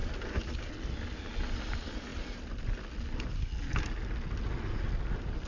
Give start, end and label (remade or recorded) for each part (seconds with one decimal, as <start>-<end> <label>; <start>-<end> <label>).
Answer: 0.0-5.5 recorded